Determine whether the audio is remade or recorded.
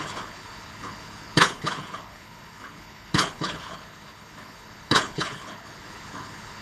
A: remade